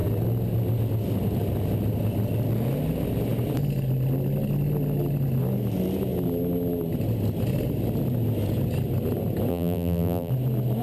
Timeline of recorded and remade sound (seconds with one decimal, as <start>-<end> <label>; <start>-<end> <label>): 0.0-9.5 recorded; 9.5-10.3 remade; 10.3-10.8 recorded